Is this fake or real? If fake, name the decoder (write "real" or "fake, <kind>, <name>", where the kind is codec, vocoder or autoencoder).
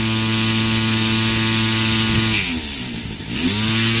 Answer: real